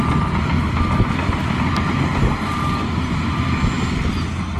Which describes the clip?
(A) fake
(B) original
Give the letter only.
B